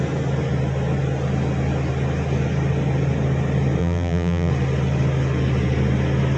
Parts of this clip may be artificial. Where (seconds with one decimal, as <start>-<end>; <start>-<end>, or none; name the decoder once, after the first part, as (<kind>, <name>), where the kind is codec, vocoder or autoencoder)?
3.8-4.5 (vocoder, BigVGAN v2)